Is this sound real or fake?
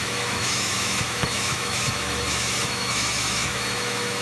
fake